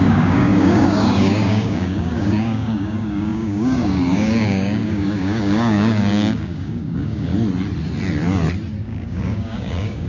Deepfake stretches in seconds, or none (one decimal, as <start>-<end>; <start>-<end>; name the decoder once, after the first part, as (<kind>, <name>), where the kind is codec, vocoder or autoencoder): 0.0-7.3 (codec, DAC); 8.8-10.1

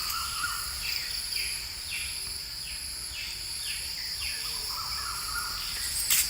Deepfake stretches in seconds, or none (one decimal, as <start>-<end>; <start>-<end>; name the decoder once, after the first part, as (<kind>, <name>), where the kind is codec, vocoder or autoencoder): 0.0-1.1 (vocoder, BigVGAN v2); 3.2-4.2

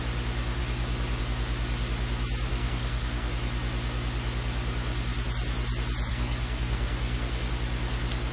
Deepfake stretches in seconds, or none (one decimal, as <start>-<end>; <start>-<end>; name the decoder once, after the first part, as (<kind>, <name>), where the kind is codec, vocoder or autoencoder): 2.5-3.3 (codec, SNAC); 6.1-7.5

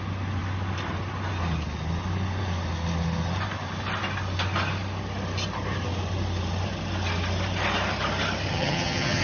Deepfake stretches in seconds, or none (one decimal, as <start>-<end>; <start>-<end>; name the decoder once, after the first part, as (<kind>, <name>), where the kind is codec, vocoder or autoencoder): 8.5-9.2 (vocoder, HiFi-GAN)